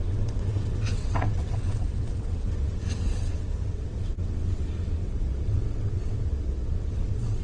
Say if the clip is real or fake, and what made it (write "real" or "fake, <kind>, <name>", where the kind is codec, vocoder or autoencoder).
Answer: fake, vocoder, WaveNeXt